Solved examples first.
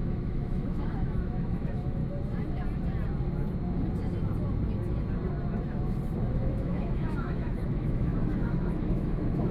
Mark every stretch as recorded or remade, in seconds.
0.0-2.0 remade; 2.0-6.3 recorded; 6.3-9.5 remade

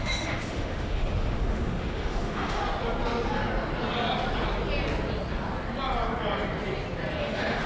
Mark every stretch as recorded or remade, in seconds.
0.0-2.6 remade; 2.6-7.2 recorded; 7.2-7.7 remade

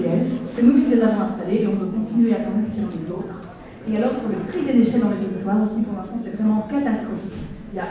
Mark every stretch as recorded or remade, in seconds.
0.0-2.8 remade; 2.8-7.3 recorded; 7.3-7.9 remade

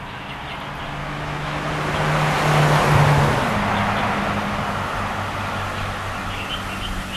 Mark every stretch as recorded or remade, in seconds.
0.0-1.0 recorded; 1.0-1.7 remade; 1.7-7.2 recorded

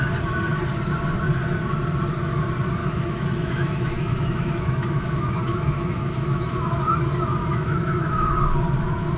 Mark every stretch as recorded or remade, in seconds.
0.0-2.8 recorded; 2.8-6.7 remade; 6.7-7.4 recorded; 7.4-8.3 remade; 8.3-9.2 recorded

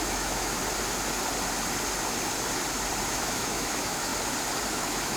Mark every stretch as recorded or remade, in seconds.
0.0-0.6 remade; 0.6-3.1 recorded; 3.1-4.1 remade; 4.1-4.7 recorded; 4.7-5.2 remade

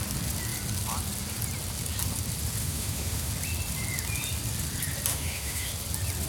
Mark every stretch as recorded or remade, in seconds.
0.0-2.6 recorded; 2.6-3.3 remade; 3.3-5.1 recorded; 5.1-5.7 remade; 5.7-6.3 recorded